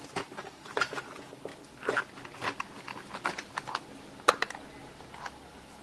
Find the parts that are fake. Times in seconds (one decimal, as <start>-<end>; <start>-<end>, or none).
none

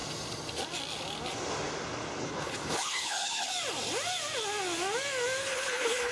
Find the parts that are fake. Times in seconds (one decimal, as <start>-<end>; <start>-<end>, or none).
2.2-3.5; 5.4-6.1

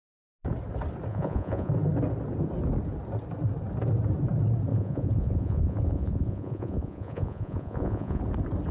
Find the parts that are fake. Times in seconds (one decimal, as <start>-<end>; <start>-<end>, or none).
1.1-1.7; 4.7-8.2

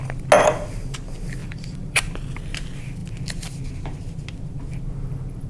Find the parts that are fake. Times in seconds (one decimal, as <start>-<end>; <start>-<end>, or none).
1.4-2.0